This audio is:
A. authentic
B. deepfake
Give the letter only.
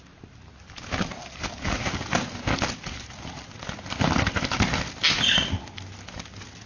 A